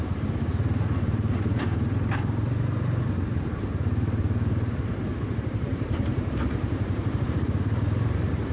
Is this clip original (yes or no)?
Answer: no